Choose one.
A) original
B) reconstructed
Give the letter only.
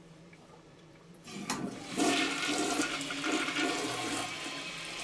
B